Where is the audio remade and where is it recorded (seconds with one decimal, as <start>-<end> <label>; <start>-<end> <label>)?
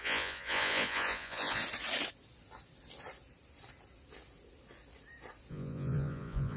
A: 0.0-1.6 remade; 1.6-5.5 recorded; 5.5-6.6 remade